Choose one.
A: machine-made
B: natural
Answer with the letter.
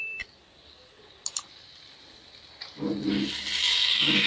B